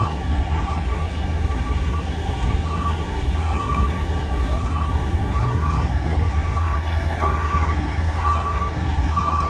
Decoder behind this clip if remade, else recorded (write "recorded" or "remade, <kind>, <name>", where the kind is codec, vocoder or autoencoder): remade, codec, SNAC